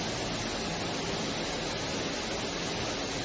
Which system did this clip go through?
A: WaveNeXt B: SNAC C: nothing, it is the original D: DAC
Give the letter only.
C